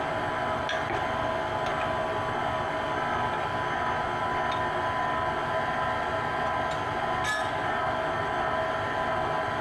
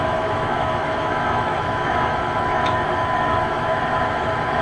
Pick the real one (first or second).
first